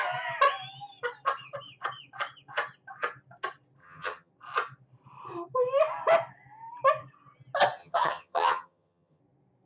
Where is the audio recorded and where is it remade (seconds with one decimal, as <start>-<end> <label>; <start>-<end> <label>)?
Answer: 0.0-3.8 recorded; 3.8-4.3 remade; 4.3-7.8 recorded; 7.8-9.2 remade; 9.2-9.7 recorded